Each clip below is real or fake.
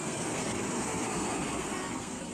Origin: fake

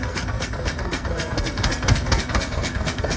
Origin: fake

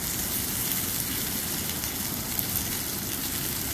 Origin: real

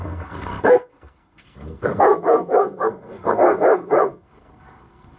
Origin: fake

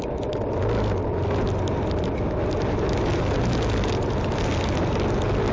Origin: real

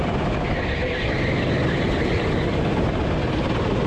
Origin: real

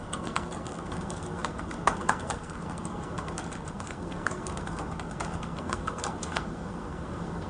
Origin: fake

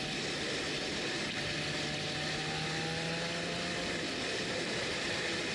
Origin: real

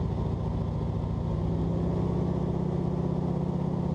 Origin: real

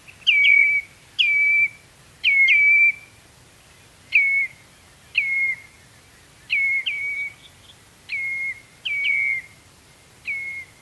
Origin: real